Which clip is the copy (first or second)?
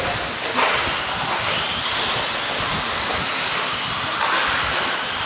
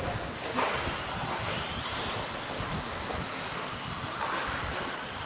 second